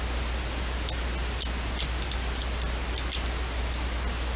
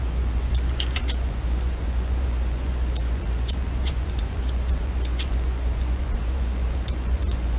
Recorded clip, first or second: first